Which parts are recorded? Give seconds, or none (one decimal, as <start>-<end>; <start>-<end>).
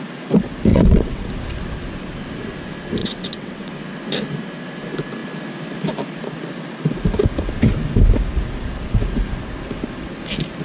0.0-0.7; 1.3-3.0; 3.7-10.6